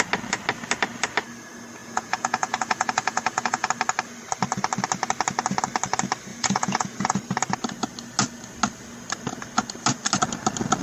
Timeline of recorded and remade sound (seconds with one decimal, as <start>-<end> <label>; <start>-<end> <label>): 0.0-1.8 recorded; 1.8-3.7 remade; 3.7-6.3 recorded; 6.3-7.2 remade; 7.2-10.8 recorded